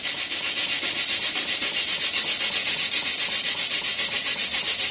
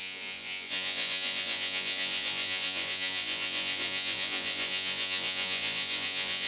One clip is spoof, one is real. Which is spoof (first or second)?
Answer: second